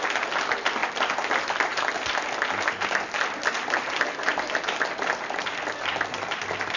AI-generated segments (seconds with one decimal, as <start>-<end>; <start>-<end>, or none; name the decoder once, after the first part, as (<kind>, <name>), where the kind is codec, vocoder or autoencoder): none